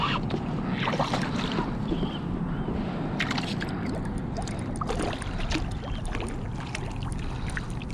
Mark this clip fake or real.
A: real